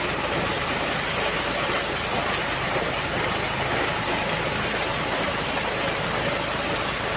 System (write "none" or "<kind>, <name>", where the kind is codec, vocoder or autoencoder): none